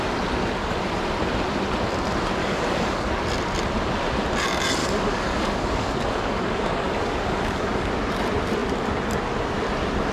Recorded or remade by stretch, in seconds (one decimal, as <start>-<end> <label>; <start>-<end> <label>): 0.0-2.4 recorded; 2.4-3.1 remade; 3.1-4.8 recorded; 4.8-7.9 remade; 7.9-10.1 recorded